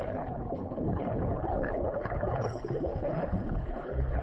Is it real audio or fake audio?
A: fake